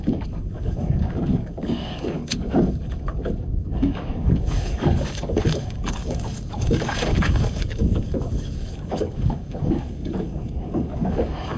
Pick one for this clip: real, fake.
fake